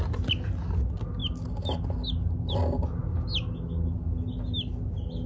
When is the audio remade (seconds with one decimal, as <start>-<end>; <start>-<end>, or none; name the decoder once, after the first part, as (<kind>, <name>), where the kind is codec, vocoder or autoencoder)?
none